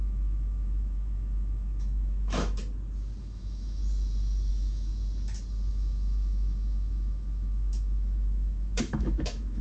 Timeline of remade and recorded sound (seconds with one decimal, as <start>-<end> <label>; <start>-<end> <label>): 0.0-2.6 remade; 2.6-3.2 recorded; 3.2-3.8 remade; 3.8-4.5 recorded; 4.5-4.9 remade; 4.9-5.7 recorded; 5.7-9.6 remade